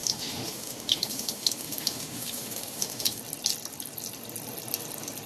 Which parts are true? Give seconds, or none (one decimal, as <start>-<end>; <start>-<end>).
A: 3.2-5.3